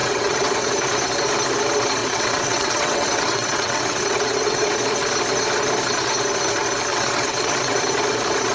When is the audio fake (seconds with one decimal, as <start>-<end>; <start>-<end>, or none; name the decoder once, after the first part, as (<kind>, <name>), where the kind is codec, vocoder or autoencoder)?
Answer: 0.0-0.7 (vocoder, WaveNeXt); 2.0-4.7; 6.9-7.8